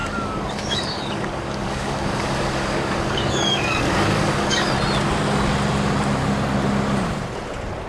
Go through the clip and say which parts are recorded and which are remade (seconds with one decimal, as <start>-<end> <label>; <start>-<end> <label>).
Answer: 0.0-4.7 remade; 4.7-7.9 recorded